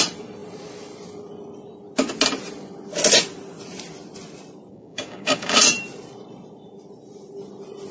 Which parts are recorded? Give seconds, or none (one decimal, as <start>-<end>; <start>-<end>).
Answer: 0.0-4.7; 5.6-7.9

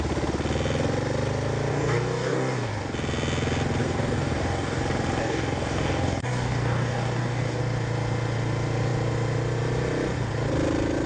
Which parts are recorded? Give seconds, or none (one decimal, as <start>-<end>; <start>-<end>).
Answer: 0.0-1.7; 2.7-3.8; 4.8-5.2; 7.6-11.1

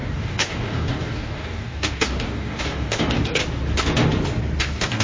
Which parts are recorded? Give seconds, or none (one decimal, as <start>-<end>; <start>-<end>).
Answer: 3.4-4.6